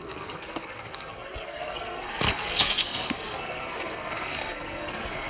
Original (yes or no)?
no